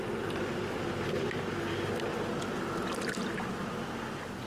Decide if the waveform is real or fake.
real